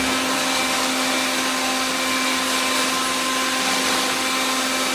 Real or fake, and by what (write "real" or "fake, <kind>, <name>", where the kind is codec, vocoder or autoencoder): real